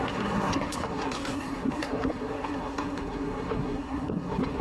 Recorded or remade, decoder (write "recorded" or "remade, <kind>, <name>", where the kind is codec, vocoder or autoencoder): remade, codec, SNAC